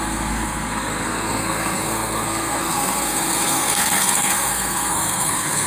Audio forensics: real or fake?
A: fake